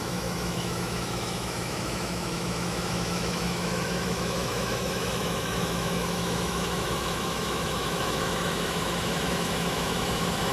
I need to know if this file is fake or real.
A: fake